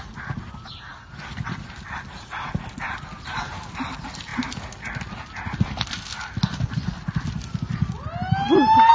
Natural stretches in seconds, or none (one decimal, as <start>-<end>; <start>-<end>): 0.0-8.9